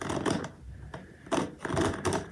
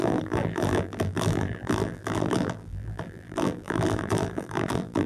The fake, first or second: second